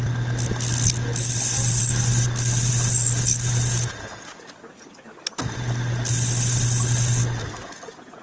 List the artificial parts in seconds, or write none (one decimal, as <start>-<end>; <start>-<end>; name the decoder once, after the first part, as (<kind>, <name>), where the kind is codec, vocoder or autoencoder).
none